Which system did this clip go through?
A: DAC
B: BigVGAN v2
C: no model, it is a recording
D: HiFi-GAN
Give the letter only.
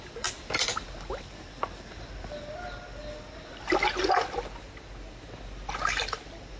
C